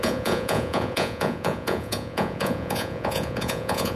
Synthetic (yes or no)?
yes